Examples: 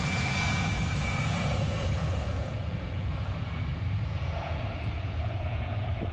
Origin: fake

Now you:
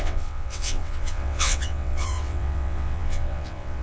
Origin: fake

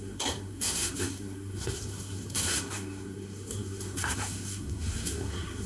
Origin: fake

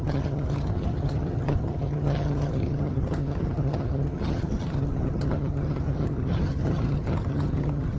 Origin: fake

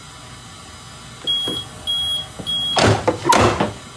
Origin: real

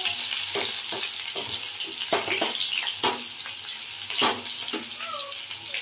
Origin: real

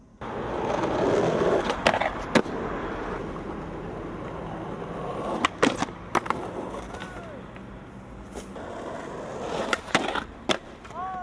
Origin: real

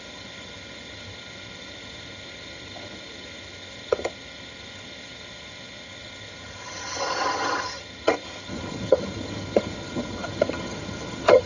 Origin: fake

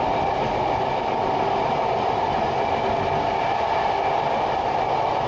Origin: real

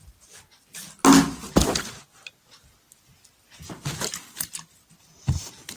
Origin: real